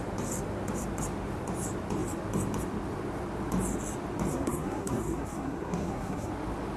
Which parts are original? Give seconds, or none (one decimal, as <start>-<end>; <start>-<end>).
0.0-4.3; 6.3-6.8